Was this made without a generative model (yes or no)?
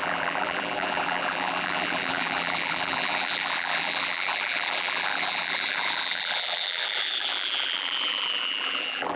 no